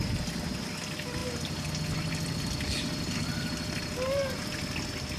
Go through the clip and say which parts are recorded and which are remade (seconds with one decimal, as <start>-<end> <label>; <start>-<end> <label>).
0.0-5.2 recorded